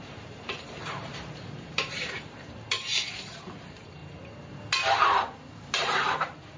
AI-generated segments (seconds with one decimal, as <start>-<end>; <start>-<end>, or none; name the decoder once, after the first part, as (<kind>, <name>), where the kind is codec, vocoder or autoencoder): 0.0-2.9 (vocoder, BigVGAN v2); 3.5-4.0; 5.0-6.6